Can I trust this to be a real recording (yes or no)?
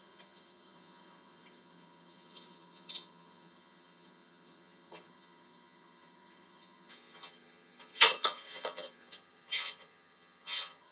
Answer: no